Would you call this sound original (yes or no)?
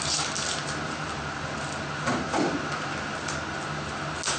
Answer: yes